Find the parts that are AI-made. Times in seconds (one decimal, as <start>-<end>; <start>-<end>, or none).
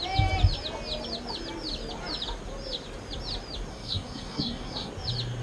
3.7-4.9